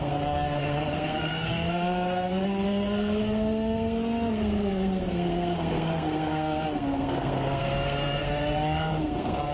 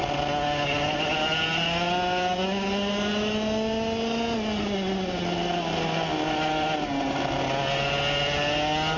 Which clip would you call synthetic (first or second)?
first